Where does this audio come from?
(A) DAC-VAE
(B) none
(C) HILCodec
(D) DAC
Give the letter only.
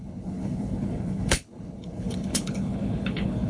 C